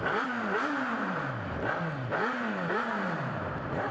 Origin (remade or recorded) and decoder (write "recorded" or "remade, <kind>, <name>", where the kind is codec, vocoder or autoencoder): remade, vocoder, BigVGAN v2